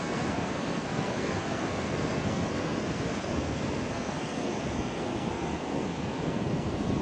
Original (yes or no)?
no